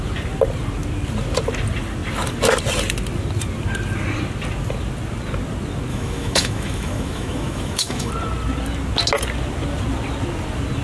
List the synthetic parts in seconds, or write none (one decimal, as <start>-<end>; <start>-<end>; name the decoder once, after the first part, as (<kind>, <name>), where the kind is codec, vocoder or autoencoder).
5.9-8.1 (autoencoder, DAC-VAE)